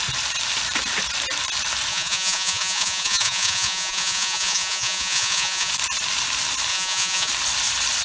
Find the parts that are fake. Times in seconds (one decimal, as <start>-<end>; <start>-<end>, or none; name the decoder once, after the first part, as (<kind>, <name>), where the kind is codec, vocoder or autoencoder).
1.9-5.7 (vocoder, Vocos); 6.7-7.3